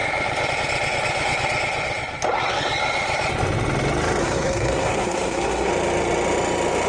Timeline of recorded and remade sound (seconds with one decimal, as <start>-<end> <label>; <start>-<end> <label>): 0.0-4.2 recorded; 4.2-5.7 remade; 5.7-6.9 recorded